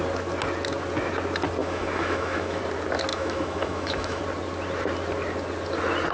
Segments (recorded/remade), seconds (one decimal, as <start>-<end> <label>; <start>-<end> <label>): 0.0-1.6 recorded; 1.6-2.6 remade; 2.6-3.1 recorded; 3.1-4.2 remade; 4.2-6.1 recorded